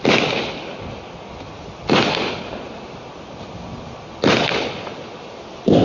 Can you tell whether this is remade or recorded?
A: recorded